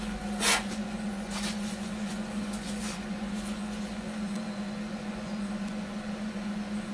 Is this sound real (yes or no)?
no